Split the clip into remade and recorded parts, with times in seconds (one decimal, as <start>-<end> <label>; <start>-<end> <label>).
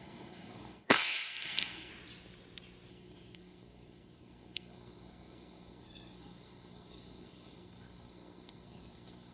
0.0-1.9 remade; 1.9-2.9 recorded; 2.9-9.3 remade